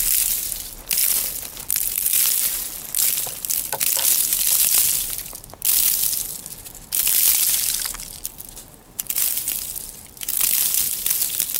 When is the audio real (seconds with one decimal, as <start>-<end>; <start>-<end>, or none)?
0.0-11.6